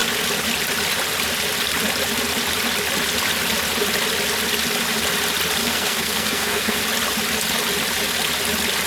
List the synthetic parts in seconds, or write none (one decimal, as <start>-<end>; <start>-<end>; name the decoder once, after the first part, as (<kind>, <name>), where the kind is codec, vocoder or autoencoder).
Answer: 5.6-6.8 (codec, SNAC)